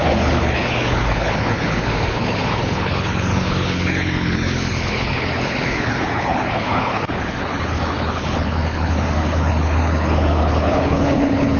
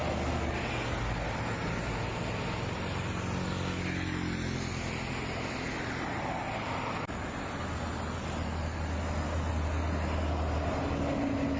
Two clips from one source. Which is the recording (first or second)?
second